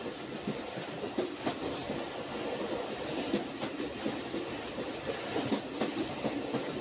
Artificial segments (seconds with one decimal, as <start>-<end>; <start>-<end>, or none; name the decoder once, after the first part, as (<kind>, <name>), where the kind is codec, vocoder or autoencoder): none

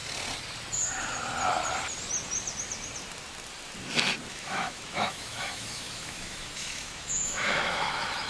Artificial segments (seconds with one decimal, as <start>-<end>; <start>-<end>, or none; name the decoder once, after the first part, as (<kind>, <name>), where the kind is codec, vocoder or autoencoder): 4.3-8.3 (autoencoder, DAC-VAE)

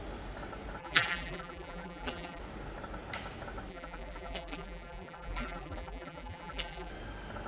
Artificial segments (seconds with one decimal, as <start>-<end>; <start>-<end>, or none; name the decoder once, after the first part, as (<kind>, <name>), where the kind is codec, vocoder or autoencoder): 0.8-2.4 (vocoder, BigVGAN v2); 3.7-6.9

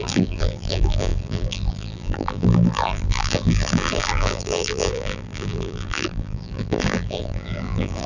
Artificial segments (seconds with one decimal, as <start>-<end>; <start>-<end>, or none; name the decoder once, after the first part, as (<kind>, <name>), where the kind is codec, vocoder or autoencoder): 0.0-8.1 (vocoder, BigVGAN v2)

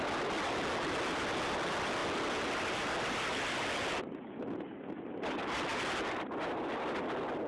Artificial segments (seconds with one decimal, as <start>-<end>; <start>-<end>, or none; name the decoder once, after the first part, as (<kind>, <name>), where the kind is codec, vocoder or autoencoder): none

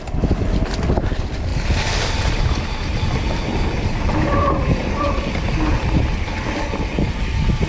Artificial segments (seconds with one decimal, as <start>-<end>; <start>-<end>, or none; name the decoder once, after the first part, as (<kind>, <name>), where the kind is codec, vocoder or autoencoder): none

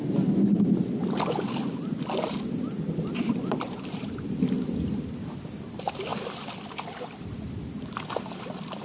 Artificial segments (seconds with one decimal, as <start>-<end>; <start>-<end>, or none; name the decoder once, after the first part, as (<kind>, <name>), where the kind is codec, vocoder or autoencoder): 6.1-7.1 (vocoder, BigVGAN v2)

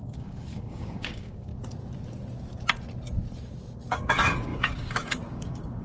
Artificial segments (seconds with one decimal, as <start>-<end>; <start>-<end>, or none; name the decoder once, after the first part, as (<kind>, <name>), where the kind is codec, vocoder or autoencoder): 0.0-1.5 (codec, DAC); 3.9-5.8